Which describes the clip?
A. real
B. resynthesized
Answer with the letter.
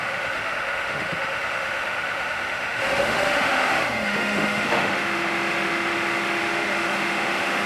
B